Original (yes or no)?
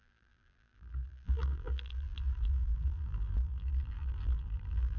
no